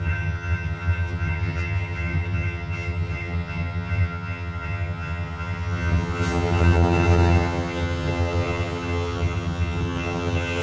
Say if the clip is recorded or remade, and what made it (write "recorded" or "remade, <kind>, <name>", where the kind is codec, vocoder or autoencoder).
remade, vocoder, HiFi-GAN